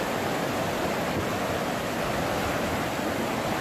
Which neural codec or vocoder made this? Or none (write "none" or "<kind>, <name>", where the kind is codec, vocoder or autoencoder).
none